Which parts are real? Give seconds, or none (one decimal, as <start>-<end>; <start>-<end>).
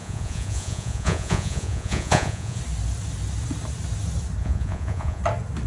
2.6-4.4; 5.2-5.7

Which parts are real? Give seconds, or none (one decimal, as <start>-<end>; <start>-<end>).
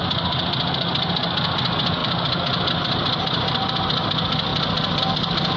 0.0-2.0; 2.7-4.5; 5.0-5.6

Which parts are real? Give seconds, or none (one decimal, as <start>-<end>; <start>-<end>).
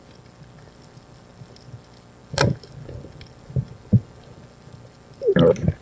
0.0-5.8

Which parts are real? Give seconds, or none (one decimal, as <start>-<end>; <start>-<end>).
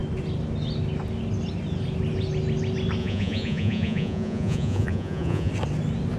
0.0-3.0; 5.5-6.2